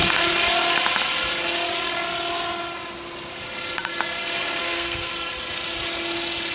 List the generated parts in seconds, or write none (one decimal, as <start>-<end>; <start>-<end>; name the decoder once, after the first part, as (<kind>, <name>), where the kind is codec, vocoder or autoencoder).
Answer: 4.6-5.1 (codec, SNAC)